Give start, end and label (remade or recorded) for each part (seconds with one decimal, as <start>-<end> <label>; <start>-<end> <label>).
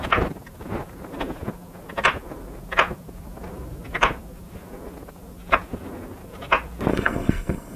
0.0-6.9 recorded; 6.9-7.8 remade